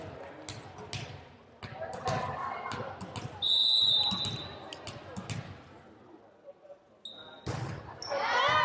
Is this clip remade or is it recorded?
recorded